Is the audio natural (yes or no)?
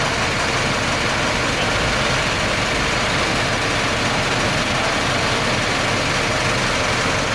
yes